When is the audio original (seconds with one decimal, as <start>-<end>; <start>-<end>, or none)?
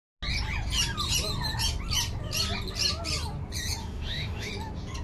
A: 0.0-3.8; 4.5-5.0